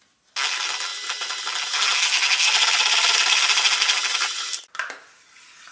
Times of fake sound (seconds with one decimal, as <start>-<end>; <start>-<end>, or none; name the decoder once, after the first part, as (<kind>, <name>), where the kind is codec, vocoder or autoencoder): none